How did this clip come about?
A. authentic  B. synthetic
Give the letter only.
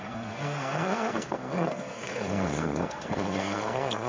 B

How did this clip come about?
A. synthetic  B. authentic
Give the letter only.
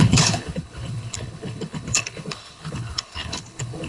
A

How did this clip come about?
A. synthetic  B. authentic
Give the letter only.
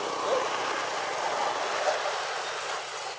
B